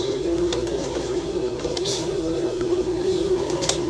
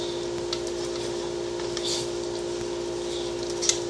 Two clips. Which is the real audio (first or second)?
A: second